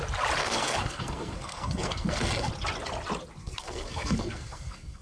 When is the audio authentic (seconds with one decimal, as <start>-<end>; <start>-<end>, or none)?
0.0-0.4; 2.5-3.4